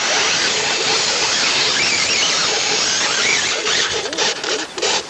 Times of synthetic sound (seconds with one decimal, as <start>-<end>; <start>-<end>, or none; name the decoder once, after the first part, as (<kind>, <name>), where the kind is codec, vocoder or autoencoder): 0.0-2.4 (vocoder, BigVGAN v2); 3.8-5.1